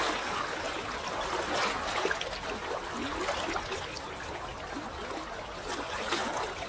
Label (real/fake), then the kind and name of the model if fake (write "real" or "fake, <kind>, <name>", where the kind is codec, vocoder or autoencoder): real